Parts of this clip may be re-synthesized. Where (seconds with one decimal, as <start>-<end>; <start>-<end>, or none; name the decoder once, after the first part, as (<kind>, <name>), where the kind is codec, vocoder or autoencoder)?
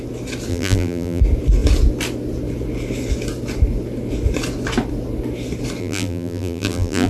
0.5-1.2 (vocoder, BigVGAN v2); 5.8-7.1